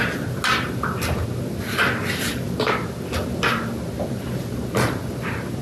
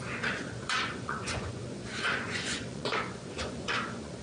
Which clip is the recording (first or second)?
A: first